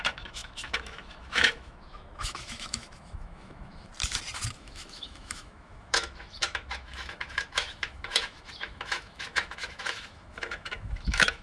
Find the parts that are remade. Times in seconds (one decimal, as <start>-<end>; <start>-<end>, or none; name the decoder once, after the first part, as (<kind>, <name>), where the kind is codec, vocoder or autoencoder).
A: 0.0-3.9 (autoencoder, DAC-VAE); 4.5-11.4